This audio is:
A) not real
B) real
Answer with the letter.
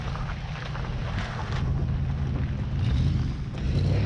B